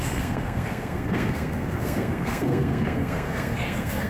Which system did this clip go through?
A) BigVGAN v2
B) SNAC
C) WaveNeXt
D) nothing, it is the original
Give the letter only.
B